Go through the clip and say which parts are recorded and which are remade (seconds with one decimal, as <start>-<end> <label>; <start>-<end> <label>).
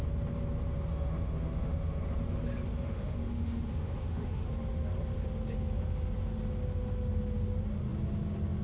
0.0-0.9 recorded; 0.9-2.0 remade; 2.0-2.7 recorded; 2.7-4.5 remade; 4.5-8.6 recorded